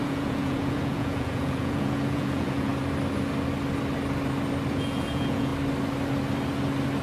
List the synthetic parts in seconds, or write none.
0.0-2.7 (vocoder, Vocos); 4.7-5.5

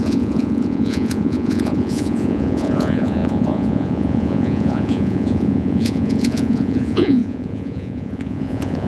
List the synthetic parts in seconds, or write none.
0.0-8.9 (vocoder, Vocos)

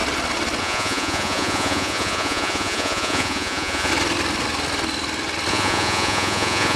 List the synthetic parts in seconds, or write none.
0.6-3.9 (vocoder, Vocos); 5.5-6.8

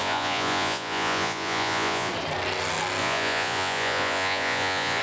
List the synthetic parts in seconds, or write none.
0.0-2.1 (vocoder, Vocos); 3.0-5.0

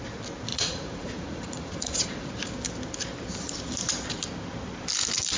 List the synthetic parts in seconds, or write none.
0.5-2.3 (vocoder, Vocos)

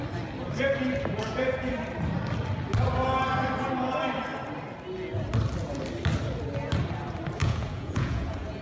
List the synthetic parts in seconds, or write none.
1.2-1.7 (vocoder, Vocos); 7.4-8.6

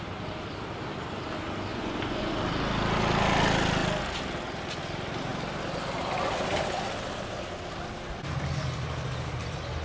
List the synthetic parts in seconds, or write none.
1.7-2.3 (vocoder, Vocos)